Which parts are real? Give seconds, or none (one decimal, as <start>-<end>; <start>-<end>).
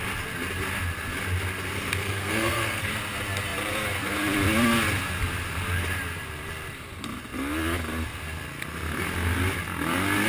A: 0.0-2.0; 2.9-10.3